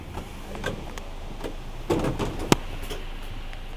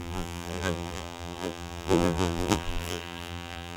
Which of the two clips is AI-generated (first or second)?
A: second